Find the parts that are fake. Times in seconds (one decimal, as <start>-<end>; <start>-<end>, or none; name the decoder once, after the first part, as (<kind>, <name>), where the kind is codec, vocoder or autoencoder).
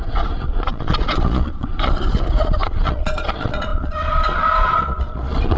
0.0-5.6 (vocoder, Vocos)